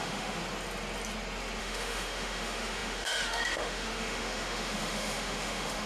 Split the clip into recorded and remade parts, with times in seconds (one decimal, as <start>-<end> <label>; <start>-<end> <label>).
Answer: 0.0-0.4 remade; 0.4-1.6 recorded; 1.6-5.9 remade